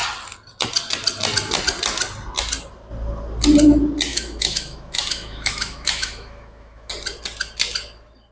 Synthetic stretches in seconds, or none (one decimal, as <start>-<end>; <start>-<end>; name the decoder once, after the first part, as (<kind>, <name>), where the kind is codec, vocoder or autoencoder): 4.1-6.9 (autoencoder, DAC-VAE)